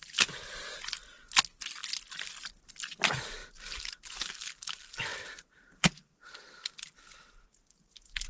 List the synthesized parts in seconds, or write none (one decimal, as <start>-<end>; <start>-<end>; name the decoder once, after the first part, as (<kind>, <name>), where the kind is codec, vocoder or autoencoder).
none